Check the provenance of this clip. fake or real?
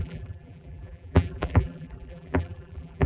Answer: fake